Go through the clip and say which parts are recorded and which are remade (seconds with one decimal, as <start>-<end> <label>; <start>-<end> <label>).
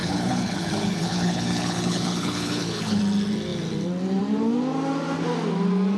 0.0-3.0 remade; 3.0-6.0 recorded